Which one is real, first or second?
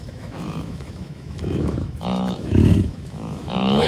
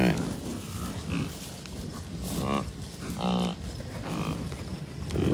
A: second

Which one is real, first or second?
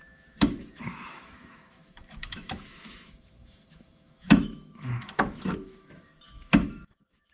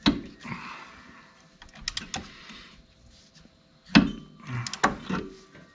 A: second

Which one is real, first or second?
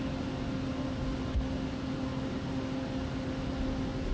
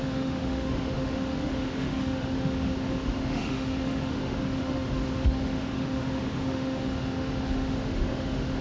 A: first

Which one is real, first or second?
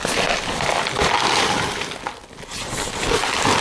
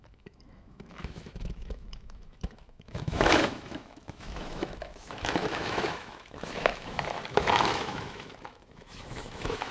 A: first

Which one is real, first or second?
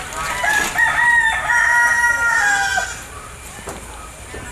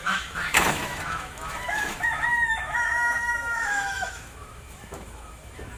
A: first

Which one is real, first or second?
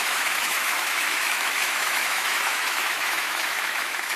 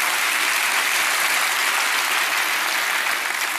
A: second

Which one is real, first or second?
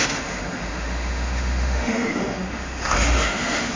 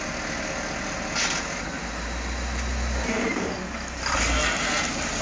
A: second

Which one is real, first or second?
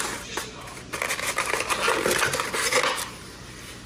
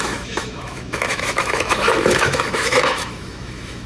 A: first